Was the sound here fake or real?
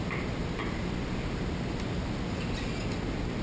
real